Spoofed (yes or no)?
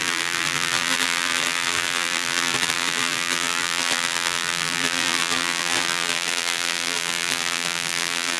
yes